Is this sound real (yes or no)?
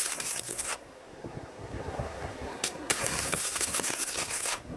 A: no